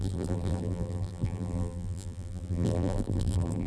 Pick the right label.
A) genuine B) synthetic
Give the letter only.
B